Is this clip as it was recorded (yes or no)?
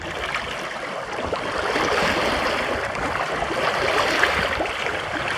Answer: yes